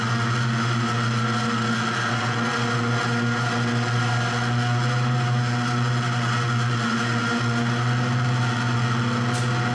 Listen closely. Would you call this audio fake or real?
real